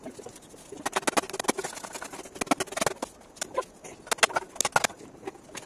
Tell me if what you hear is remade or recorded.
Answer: recorded